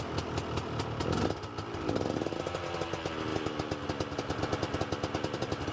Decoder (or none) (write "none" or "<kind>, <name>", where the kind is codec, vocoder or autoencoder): vocoder, BigVGAN v2